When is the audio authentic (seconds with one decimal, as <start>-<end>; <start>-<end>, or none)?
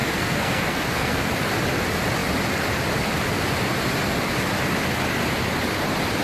1.3-6.2